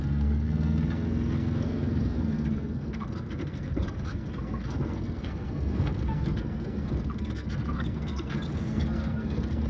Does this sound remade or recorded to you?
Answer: remade